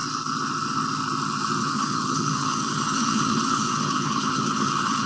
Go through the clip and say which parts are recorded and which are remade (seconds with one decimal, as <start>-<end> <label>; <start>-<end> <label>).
0.0-1.6 recorded; 1.6-5.1 remade